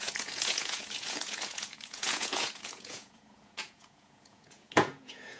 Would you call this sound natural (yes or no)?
no